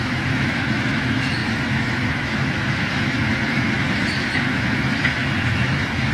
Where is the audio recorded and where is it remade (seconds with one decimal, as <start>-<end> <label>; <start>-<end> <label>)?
0.0-6.1 remade